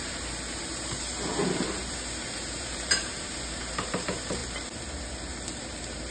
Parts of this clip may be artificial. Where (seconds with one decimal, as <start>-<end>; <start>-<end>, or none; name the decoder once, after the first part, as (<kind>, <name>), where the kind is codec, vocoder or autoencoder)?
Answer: 0.0-4.4 (vocoder, BigVGAN v2); 5.6-6.1